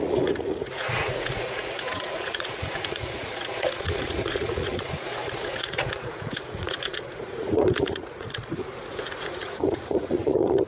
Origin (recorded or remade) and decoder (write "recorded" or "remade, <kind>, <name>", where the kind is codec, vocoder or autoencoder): remade, vocoder, Vocos